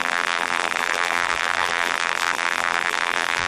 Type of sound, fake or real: fake